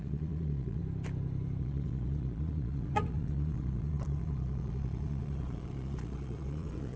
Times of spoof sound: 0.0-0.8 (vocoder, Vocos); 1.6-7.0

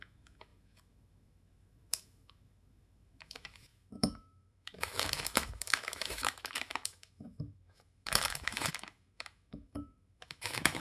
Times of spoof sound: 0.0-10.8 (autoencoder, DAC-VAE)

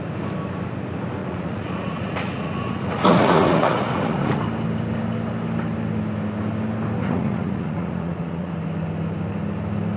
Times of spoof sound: 1.2-4.4 (vocoder, Vocos); 7.0-8.5

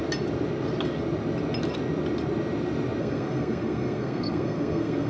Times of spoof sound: 3.0-5.1 (codec, SNAC)

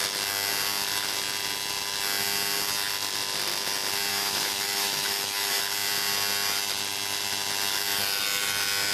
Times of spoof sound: 4.1-5.6 (autoencoder, DAC-VAE)

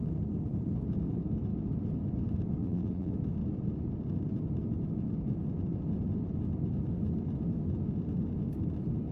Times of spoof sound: 2.6-3.1 (vocoder, BigVGAN v2)

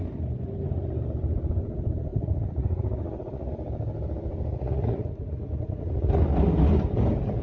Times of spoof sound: 2.1-3.5 (vocoder, Vocos); 4.5-6.1